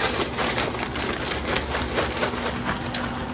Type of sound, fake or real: real